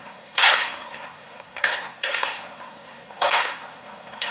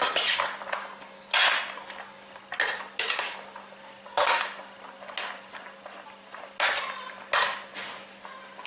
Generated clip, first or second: first